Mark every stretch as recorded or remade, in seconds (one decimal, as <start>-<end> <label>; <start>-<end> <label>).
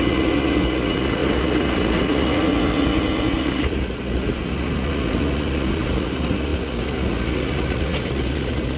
0.0-8.8 remade